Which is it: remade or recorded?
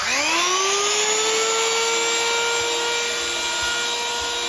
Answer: recorded